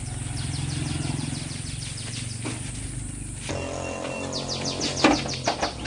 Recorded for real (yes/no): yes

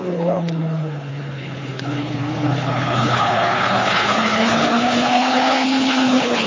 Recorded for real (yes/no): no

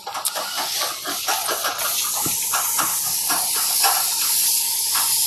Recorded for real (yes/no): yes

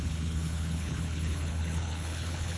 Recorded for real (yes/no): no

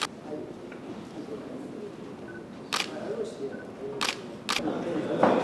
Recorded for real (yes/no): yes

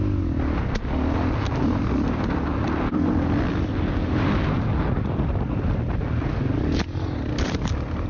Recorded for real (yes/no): yes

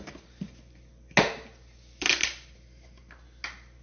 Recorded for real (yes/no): yes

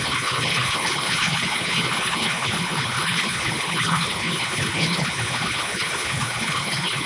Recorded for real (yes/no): no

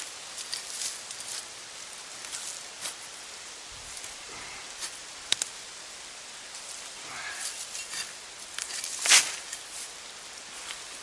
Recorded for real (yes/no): yes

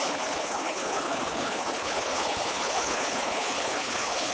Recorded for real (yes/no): no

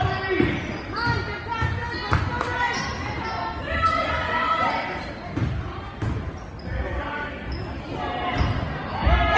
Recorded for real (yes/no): yes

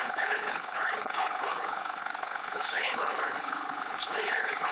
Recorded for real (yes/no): no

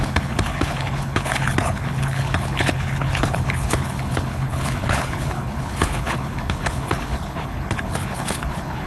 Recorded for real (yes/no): no